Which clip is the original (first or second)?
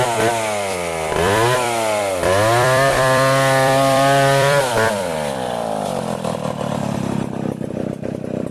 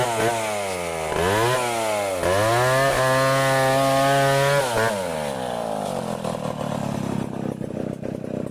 second